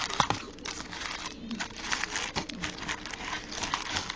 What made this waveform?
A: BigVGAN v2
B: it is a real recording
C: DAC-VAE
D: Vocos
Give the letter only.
B